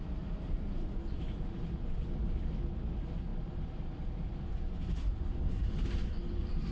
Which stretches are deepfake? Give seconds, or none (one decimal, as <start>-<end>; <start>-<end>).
none

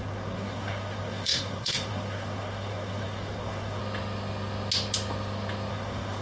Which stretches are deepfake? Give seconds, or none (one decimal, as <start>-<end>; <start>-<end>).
0.0-3.8; 5.7-6.2

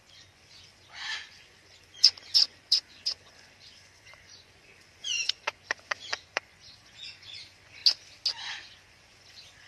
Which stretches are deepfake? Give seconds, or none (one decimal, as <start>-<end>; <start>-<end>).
0.0-7.8; 8.4-9.7